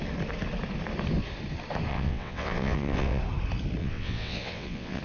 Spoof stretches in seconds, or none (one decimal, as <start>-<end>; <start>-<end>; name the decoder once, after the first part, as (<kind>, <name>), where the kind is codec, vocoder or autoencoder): 1.9-3.2 (vocoder, WaveNeXt); 3.8-5.0